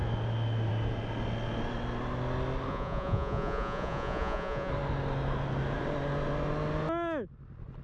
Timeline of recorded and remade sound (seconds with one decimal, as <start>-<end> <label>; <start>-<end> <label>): 0.0-2.7 recorded; 2.7-4.7 remade; 4.7-7.8 recorded